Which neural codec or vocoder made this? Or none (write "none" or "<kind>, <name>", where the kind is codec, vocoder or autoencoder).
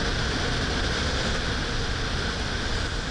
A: none